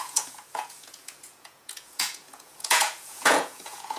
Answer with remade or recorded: remade